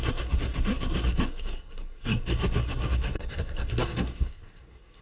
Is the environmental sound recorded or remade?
remade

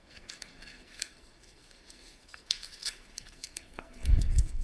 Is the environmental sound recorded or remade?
remade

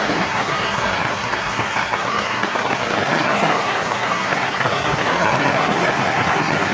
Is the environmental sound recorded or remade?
remade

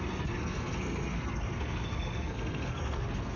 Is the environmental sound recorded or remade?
remade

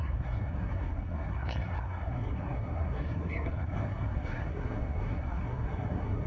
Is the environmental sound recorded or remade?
remade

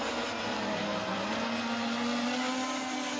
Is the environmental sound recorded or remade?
recorded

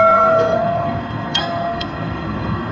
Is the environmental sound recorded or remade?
remade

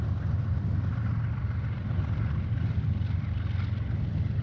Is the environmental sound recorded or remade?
recorded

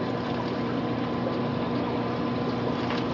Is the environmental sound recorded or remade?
recorded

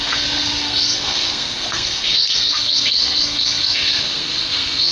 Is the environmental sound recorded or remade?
remade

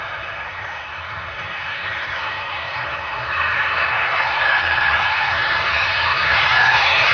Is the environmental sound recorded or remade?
remade